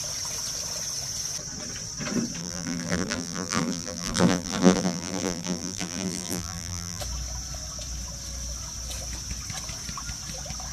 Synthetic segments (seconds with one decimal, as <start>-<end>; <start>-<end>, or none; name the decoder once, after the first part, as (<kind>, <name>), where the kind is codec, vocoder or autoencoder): 2.4-7.0 (vocoder, BigVGAN v2)